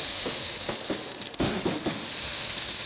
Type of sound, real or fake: fake